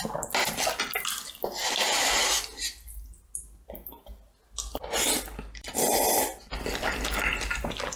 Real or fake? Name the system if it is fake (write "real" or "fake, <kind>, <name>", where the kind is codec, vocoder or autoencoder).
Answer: real